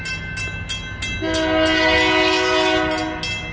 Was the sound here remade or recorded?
recorded